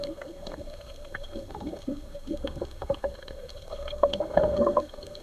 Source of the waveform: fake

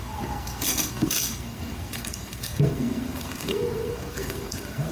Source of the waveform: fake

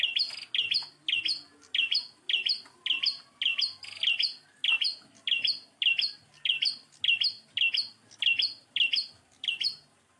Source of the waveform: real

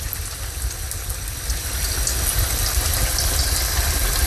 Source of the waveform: real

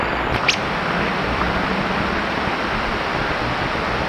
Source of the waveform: real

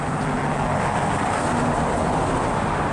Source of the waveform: real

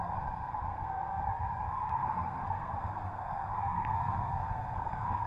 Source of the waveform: fake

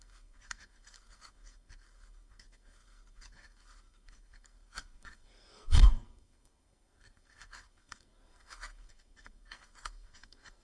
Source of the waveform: fake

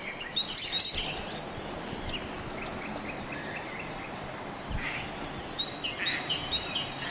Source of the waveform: real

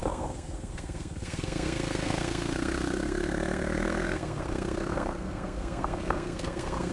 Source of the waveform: fake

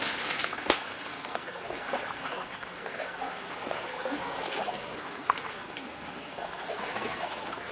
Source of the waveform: fake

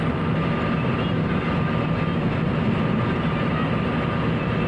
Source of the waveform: real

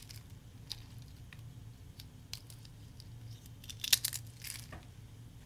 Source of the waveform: real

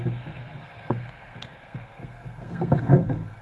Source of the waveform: fake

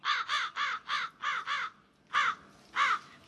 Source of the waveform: real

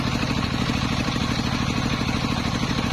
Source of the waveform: real